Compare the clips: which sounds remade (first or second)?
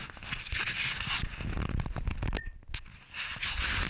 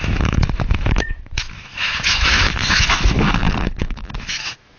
second